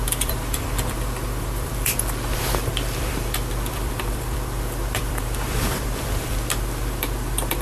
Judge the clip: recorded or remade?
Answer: remade